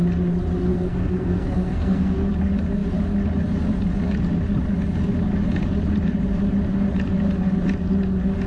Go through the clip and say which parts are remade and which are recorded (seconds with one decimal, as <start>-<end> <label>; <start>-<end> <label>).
0.0-0.7 recorded; 0.7-2.3 remade; 2.3-8.5 recorded